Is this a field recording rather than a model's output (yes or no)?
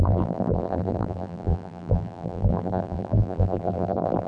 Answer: no